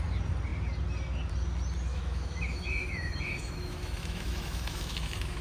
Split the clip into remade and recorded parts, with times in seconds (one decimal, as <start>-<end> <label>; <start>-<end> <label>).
0.0-1.9 recorded; 1.9-5.4 remade